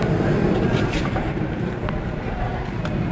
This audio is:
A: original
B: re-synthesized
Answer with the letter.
B